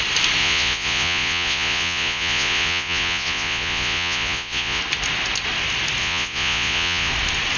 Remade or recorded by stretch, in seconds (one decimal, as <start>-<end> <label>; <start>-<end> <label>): 0.0-0.4 recorded; 0.4-4.8 remade; 4.8-6.0 recorded; 6.0-7.1 remade; 7.1-7.6 recorded